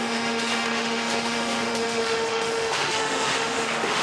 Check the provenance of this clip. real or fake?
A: fake